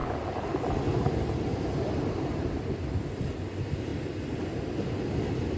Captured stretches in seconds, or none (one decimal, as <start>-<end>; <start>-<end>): 0.0-5.6